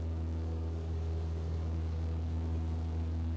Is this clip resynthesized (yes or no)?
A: yes